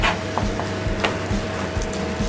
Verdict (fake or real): real